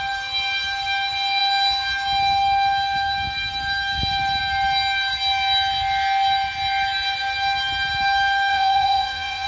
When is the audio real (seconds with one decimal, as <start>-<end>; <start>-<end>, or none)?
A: 0.0-8.5